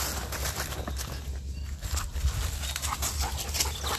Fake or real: real